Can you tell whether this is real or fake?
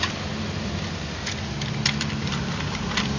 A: fake